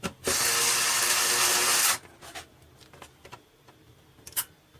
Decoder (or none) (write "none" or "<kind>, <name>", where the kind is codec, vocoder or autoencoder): none